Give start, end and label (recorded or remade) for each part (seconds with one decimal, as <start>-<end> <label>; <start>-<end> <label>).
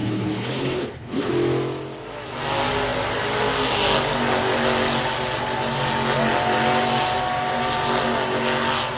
0.0-1.3 remade; 1.3-9.0 recorded